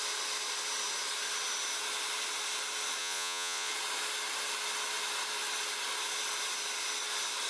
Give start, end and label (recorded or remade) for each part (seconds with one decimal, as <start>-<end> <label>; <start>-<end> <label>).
0.0-3.0 recorded; 3.0-3.7 remade; 3.7-7.5 recorded